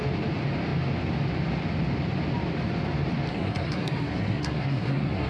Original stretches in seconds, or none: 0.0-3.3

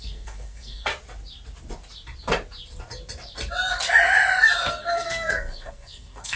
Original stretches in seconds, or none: 0.9-4.7

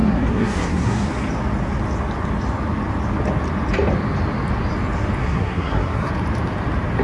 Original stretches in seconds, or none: 1.1-5.2; 6.1-7.0

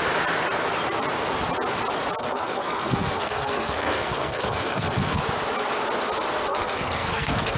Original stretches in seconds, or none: 0.0-2.2; 5.2-6.5

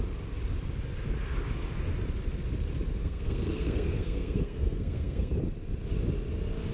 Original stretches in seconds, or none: 0.0-3.0; 5.3-6.7

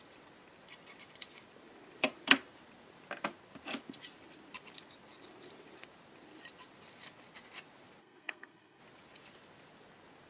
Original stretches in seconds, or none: 0.0-8.0; 8.8-10.3

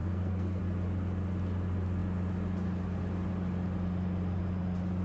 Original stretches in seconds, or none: 0.6-5.0

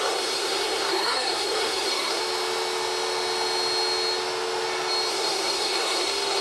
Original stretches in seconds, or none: 2.2-5.1